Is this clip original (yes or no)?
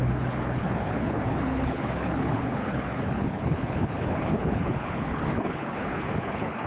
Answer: no